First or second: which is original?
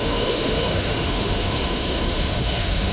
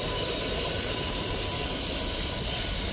second